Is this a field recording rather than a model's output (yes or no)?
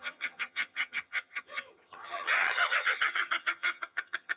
no